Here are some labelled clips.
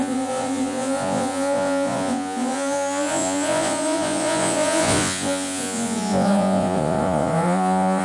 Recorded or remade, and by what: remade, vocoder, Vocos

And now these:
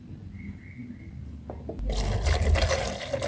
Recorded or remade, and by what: recorded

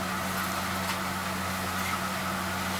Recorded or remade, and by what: recorded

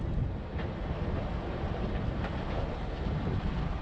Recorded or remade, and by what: recorded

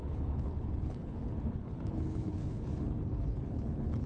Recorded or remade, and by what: remade, codec, HILCodec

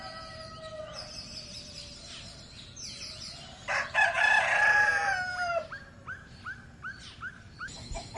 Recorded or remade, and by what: remade, vocoder, BigVGAN v2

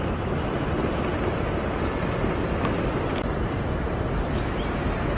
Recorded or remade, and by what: recorded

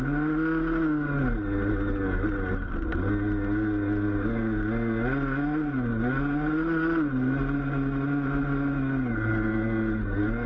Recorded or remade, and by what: recorded